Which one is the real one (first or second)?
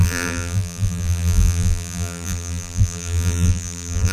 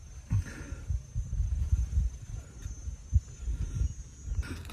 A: second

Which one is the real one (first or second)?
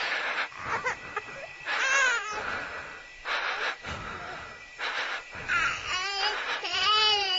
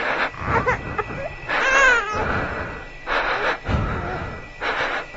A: second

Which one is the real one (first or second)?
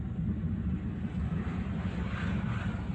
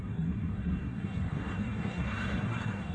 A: first